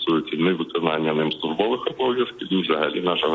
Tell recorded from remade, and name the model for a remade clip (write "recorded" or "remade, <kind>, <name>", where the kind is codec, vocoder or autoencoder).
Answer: recorded